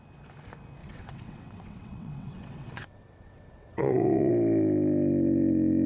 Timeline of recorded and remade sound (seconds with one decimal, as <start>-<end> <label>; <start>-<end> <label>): 0.0-0.8 recorded; 0.8-4.3 remade; 4.3-5.9 recorded